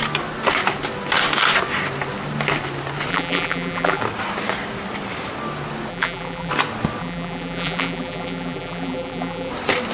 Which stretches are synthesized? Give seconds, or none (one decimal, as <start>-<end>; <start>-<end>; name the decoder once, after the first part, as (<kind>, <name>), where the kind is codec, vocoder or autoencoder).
3.1-4.0 (vocoder, BigVGAN v2); 5.9-6.5; 7.0-9.5